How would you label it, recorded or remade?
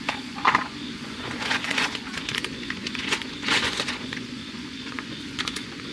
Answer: remade